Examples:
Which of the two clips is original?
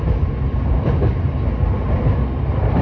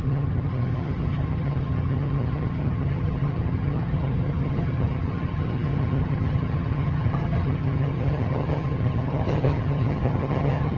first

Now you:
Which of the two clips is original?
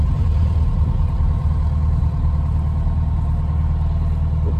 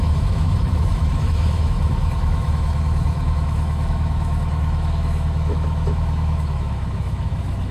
first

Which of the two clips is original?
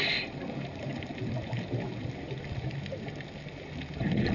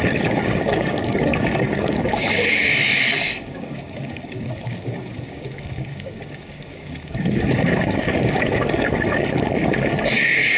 first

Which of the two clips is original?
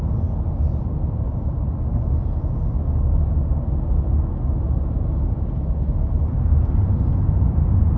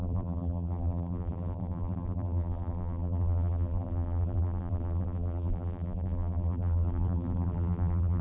first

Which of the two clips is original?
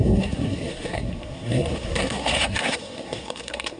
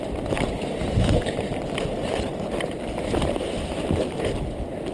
second